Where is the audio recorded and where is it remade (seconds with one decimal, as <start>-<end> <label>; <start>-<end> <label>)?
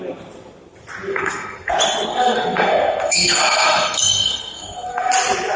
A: 0.0-1.1 recorded; 1.1-1.7 remade; 1.7-2.1 recorded; 2.1-5.1 remade; 5.1-5.6 recorded